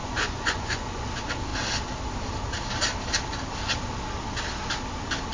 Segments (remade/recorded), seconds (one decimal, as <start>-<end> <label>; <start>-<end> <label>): 0.0-1.0 remade; 1.0-5.3 recorded